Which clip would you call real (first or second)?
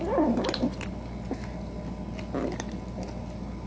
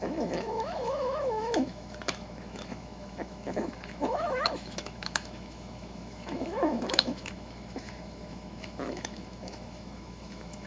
first